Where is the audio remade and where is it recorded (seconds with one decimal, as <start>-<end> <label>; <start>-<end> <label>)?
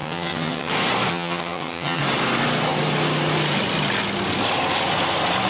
0.0-0.7 remade; 0.7-1.1 recorded; 1.1-2.0 remade; 2.0-5.5 recorded